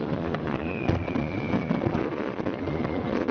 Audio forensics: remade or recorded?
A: remade